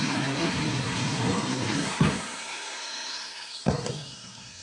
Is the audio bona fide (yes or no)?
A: no